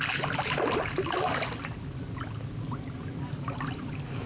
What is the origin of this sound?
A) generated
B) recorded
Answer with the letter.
B